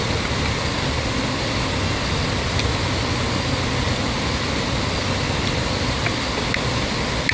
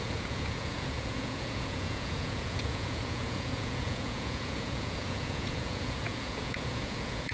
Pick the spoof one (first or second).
second